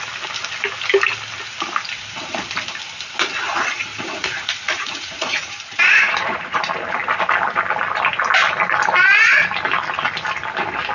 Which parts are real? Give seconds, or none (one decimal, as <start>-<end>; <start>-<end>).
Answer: 0.0-3.9; 6.6-10.9